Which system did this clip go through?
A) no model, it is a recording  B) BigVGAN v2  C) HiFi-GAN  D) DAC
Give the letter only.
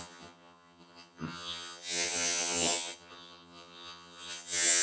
C